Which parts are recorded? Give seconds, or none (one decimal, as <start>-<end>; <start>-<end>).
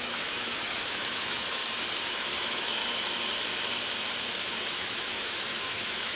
1.6-2.1; 2.8-4.5